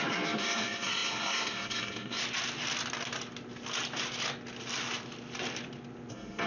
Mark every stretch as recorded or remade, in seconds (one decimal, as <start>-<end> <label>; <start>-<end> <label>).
0.0-2.2 remade; 2.2-6.1 recorded; 6.1-6.5 remade